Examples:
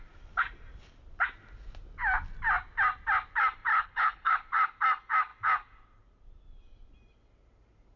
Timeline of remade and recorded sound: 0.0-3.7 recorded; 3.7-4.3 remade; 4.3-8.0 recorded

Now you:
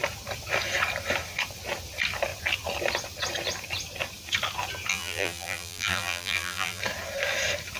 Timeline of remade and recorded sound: 0.0-4.9 recorded; 4.9-6.8 remade; 6.8-7.8 recorded

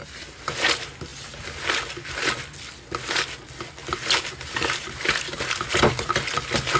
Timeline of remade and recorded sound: 0.0-3.8 recorded; 3.8-6.1 remade; 6.1-6.8 recorded

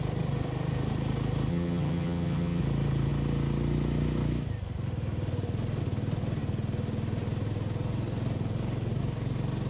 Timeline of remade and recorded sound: 0.0-1.5 recorded; 1.5-2.6 remade; 2.6-9.7 recorded